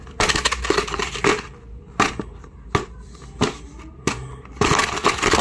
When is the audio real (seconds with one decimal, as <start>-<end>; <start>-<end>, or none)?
0.0-5.4